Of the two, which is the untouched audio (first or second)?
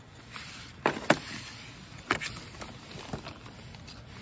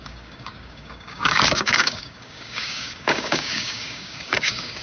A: first